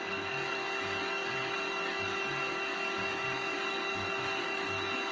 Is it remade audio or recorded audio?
remade